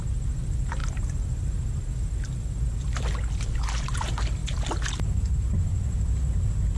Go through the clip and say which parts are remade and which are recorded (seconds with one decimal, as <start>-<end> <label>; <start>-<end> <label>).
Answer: 0.0-6.8 recorded